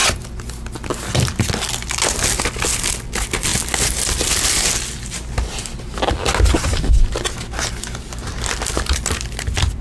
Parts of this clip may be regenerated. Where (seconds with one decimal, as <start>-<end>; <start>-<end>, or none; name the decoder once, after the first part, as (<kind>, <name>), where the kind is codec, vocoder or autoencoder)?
none